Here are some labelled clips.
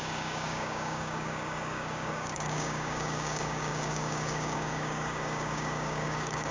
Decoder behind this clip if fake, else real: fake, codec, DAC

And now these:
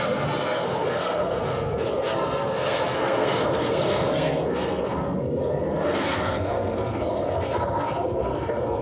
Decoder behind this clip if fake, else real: fake, codec, SNAC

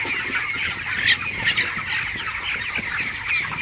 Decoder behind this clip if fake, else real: real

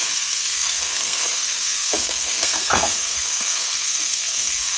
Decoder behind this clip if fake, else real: fake, codec, SNAC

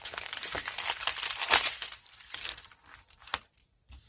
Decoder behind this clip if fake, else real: real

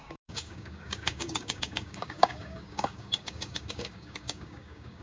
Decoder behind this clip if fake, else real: fake, codec, DAC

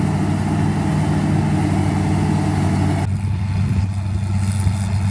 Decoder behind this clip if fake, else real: real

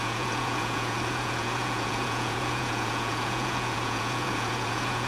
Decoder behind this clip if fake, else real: fake, vocoder, Vocos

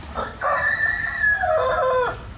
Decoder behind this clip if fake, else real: real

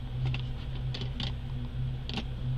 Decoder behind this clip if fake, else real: real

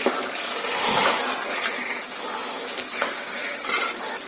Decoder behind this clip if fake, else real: real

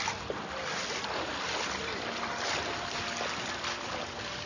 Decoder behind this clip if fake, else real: real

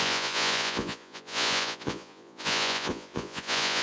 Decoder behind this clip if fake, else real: fake, vocoder, Vocos